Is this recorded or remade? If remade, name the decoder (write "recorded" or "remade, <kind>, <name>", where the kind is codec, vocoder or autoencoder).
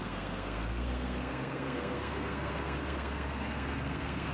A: remade, codec, SNAC